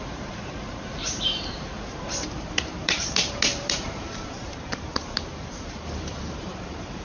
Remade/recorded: remade